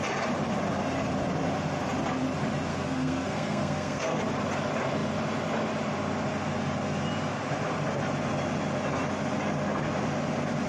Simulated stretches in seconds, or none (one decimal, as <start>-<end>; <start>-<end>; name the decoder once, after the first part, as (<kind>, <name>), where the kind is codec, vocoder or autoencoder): 2.7-4.2 (codec, SNAC)